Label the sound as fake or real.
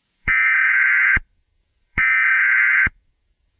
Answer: fake